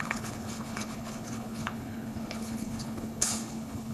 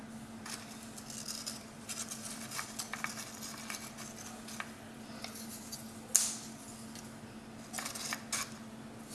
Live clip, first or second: second